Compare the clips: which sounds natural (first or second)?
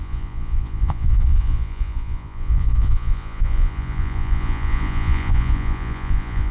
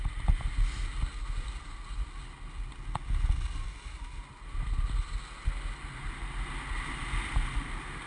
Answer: second